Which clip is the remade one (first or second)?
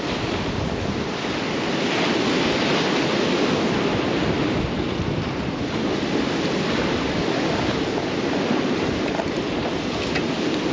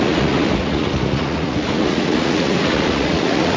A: second